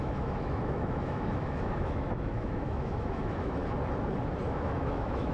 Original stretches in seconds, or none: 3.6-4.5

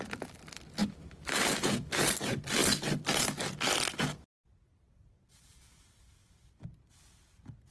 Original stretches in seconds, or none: 0.0-0.8; 2.0-7.7

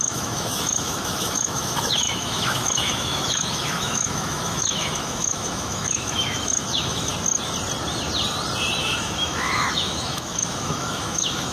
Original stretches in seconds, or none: 7.1-8.8

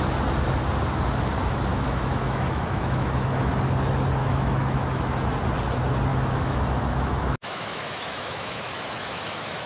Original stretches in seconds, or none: 0.0-1.7; 3.5-4.2; 5.3-6.1

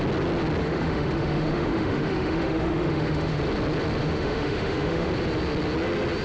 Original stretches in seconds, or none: 0.0-0.6; 3.4-4.0; 5.1-6.2